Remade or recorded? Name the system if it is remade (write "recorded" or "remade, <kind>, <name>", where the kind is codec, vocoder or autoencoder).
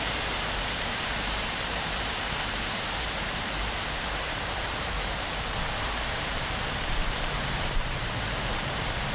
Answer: remade, vocoder, BigVGAN v2